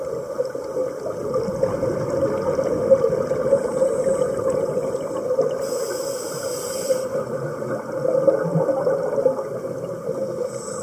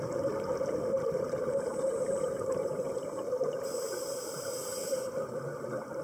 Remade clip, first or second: second